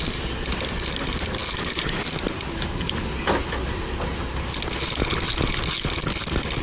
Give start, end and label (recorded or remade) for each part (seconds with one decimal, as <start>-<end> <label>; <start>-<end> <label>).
0.0-6.6 recorded